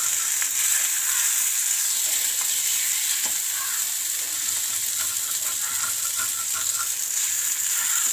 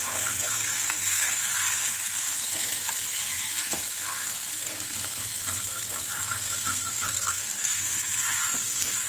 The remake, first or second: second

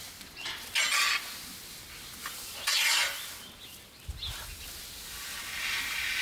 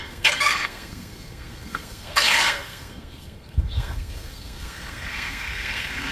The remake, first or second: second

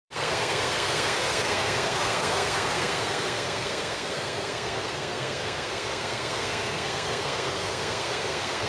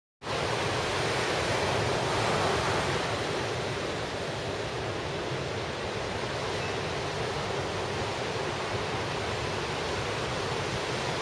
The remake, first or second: first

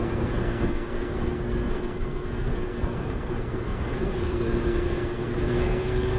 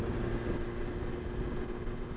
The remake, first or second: first